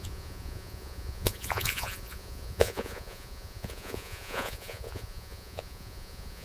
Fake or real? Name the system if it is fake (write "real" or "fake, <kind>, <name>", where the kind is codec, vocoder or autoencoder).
fake, vocoder, Vocos